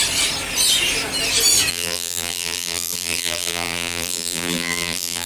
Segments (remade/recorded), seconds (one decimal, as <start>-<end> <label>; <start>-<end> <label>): 0.0-1.7 recorded; 1.7-5.3 remade